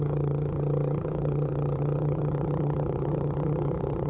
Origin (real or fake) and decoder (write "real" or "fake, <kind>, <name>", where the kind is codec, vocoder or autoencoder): fake, vocoder, HiFi-GAN